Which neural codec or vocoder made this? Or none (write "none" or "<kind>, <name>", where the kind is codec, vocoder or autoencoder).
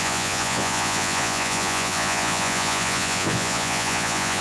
vocoder, Vocos